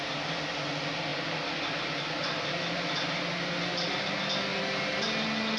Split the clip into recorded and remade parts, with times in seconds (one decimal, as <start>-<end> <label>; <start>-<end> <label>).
0.0-1.1 recorded; 1.1-2.7 remade; 2.7-5.6 recorded